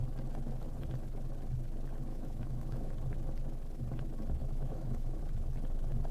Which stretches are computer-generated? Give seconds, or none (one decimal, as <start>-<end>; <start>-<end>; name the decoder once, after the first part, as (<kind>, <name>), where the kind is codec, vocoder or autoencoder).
2.1-2.9 (autoencoder, DAC-VAE); 4.4-5.2